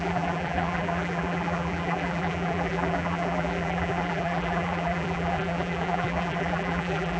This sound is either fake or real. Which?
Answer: fake